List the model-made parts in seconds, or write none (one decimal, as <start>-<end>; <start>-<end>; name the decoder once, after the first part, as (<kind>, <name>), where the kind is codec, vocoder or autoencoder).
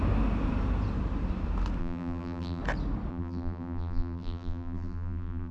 1.8-2.6 (vocoder, BigVGAN v2); 3.1-5.5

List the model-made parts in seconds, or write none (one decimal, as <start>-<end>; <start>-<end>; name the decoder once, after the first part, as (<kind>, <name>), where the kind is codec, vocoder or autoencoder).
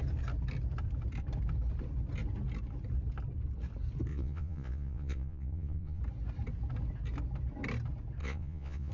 4.1-6.0 (vocoder, Vocos); 8.2-8.9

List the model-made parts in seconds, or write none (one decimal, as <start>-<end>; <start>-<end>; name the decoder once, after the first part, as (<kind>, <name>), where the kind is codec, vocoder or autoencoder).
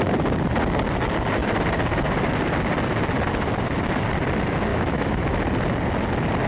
4.7-5.4 (autoencoder, DAC-VAE)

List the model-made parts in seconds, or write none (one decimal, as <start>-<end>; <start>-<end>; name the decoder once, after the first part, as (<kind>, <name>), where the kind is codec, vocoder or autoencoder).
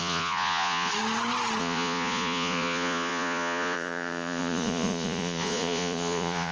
0.0-0.9 (vocoder, Vocos); 1.6-6.5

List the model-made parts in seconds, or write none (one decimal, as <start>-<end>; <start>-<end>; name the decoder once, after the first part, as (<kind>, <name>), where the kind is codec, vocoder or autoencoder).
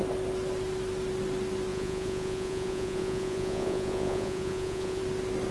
1.7-5.0 (vocoder, Vocos)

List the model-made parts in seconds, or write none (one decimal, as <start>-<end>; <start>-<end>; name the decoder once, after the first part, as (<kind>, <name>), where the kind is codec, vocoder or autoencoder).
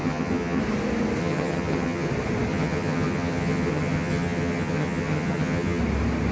0.0-0.6 (vocoder, HiFi-GAN); 1.2-2.1; 2.5-5.8